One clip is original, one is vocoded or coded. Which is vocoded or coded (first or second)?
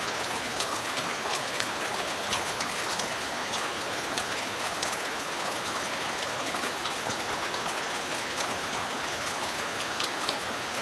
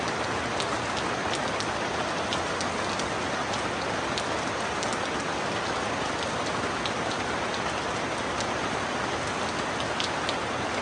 first